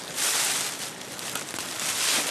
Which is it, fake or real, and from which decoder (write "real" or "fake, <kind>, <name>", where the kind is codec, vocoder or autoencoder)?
real